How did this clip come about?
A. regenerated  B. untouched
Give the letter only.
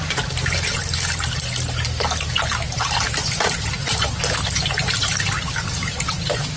B